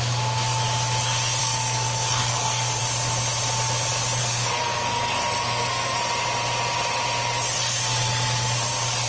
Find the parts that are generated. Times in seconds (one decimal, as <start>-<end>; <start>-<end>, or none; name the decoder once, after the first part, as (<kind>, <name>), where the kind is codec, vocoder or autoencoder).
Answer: 1.4-2.8 (codec, SNAC); 4.2-6.0